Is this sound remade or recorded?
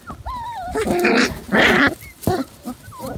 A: recorded